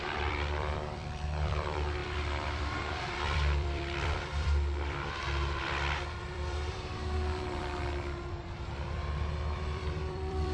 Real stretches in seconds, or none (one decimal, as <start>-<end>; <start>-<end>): none